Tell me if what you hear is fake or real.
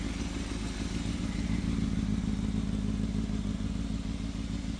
real